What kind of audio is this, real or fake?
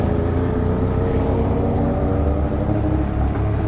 real